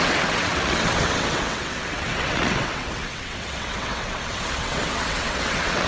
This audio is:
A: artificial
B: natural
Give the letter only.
A